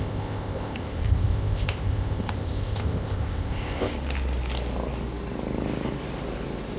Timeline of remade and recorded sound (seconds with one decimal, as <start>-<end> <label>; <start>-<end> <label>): 0.0-3.9 remade; 3.9-6.8 recorded